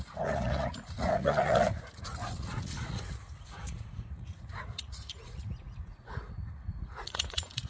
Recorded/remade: remade